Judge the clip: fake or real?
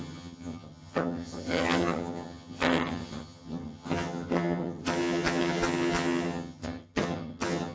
fake